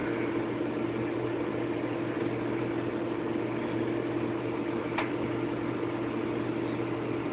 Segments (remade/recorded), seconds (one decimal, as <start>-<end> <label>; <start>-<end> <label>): 0.0-7.3 recorded